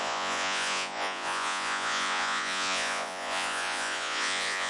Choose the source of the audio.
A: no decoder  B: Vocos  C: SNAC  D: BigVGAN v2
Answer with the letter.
B